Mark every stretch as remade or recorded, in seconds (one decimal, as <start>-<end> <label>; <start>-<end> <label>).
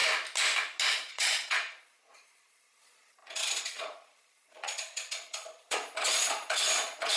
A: 0.0-0.9 recorded; 0.9-7.2 remade